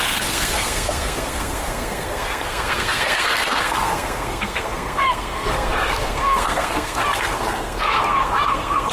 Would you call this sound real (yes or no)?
no